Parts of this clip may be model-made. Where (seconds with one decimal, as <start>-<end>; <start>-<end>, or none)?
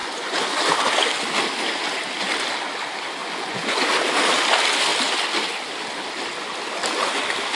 0.0-0.7; 3.2-3.8